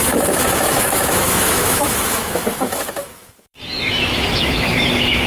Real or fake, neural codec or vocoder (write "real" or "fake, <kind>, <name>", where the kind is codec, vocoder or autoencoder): fake, autoencoder, DAC-VAE